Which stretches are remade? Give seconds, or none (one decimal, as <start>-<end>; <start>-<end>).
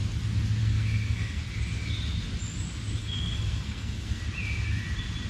0.6-1.4; 3.0-4.2